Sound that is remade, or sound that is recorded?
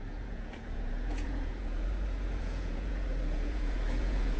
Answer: remade